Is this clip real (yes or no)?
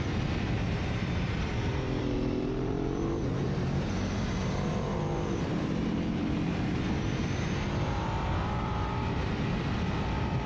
no